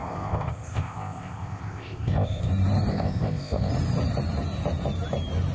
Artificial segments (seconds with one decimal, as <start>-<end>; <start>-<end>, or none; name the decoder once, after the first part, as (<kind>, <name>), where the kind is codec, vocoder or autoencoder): 0.0-2.5 (codec, ZipCodec); 2.9-3.7